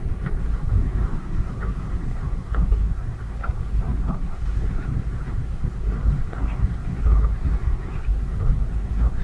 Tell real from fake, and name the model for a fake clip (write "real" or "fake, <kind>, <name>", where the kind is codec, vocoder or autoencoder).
fake, codec, SNAC